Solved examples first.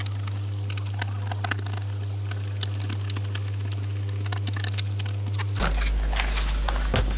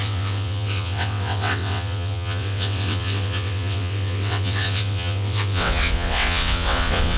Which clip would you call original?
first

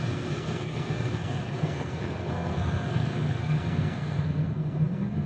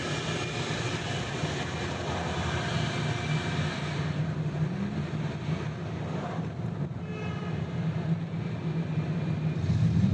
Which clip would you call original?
second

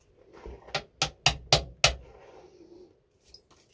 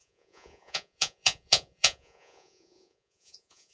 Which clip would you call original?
first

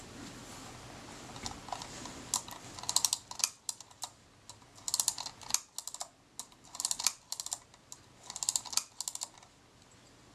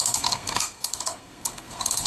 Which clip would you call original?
first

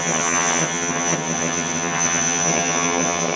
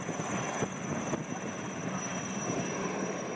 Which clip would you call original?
second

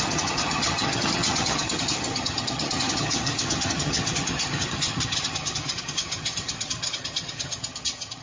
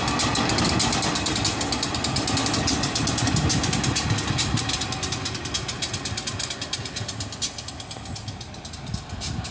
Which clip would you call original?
second